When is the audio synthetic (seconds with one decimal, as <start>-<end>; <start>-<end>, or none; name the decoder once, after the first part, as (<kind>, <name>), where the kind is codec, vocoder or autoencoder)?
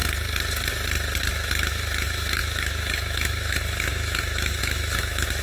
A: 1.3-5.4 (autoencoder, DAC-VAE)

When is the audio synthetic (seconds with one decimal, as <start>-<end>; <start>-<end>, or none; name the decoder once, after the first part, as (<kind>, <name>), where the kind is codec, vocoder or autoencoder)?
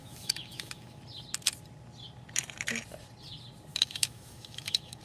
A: 0.0-1.0 (autoencoder, DAC-VAE); 3.7-5.0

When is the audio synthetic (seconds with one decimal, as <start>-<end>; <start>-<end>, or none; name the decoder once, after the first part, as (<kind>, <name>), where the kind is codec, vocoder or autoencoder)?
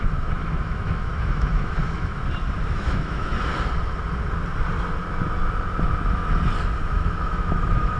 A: 0.0-2.2 (autoencoder, DAC-VAE); 2.7-3.3; 6.8-8.0